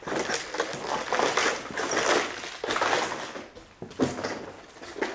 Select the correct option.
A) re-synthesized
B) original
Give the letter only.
B